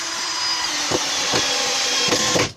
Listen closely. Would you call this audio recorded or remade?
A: remade